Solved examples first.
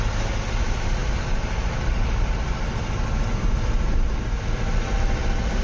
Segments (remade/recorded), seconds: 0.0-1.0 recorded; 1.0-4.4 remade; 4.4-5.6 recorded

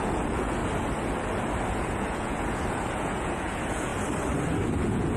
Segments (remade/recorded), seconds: 0.0-0.6 remade; 0.6-1.7 recorded; 1.7-3.9 remade; 3.9-4.8 recorded; 4.8-5.2 remade

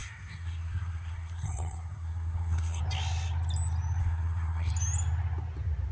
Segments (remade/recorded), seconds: 0.0-2.8 remade; 2.8-4.0 recorded; 4.0-4.7 remade; 4.7-5.9 recorded

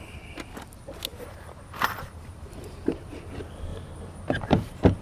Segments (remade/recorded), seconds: 0.0-1.1 recorded; 1.1-3.1 remade; 3.1-3.7 recorded; 3.7-5.0 remade

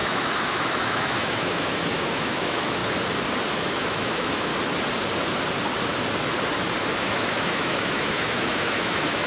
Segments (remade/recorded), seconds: 0.0-2.8 remade; 2.8-3.5 recorded; 3.5-4.5 remade; 4.5-7.0 recorded; 7.0-9.3 remade

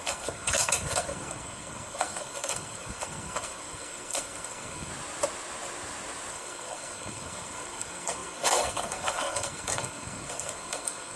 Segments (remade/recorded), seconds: 0.0-4.9 remade; 4.9-6.3 recorded; 6.3-11.2 remade

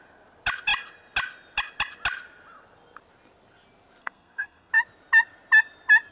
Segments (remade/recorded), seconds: 0.0-4.0 recorded; 4.0-4.7 remade; 4.7-6.1 recorded

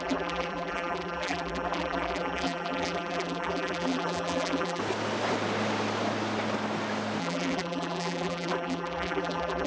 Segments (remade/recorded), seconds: 0.0-4.8 remade; 4.8-7.2 recorded; 7.2-9.7 remade